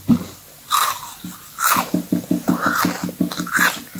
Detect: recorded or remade recorded